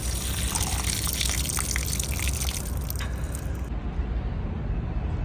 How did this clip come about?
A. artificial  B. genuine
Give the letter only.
B